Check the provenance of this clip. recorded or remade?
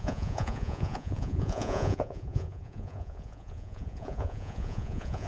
remade